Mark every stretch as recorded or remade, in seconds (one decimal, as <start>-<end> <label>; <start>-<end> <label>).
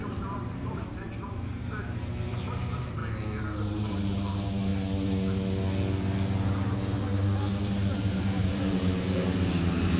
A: 0.0-3.0 remade; 3.0-3.6 recorded; 3.6-4.7 remade; 4.7-7.5 recorded; 7.5-10.0 remade